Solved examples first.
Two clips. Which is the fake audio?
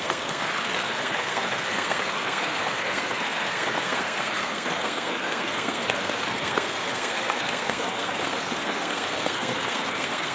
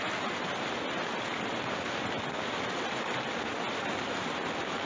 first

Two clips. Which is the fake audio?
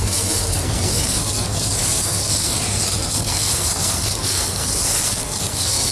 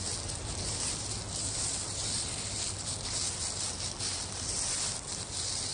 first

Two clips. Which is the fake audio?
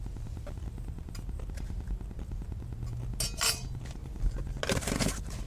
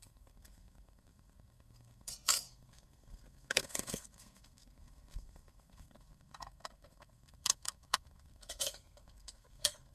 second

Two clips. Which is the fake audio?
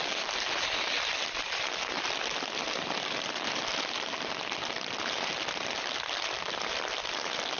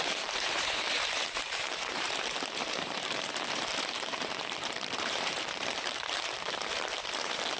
second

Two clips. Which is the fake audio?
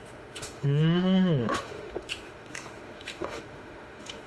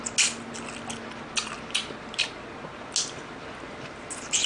first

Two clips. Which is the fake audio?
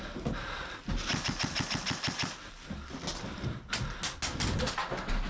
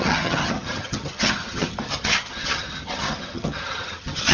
second